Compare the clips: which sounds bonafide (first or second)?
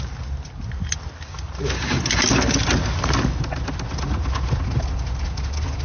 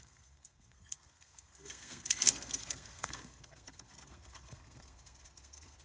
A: first